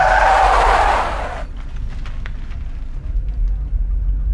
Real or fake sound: real